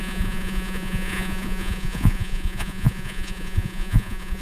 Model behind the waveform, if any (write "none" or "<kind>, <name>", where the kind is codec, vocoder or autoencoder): vocoder, Vocos